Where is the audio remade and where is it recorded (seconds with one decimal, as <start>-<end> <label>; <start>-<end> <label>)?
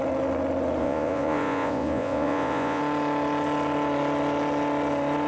0.0-0.8 recorded; 0.8-2.8 remade; 2.8-5.3 recorded